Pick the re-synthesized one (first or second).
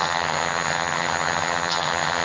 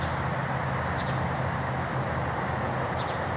first